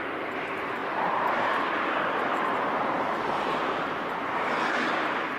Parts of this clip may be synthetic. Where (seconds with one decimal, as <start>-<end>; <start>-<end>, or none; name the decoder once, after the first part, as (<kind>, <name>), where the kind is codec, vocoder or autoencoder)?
2.3-3.5 (vocoder, BigVGAN v2)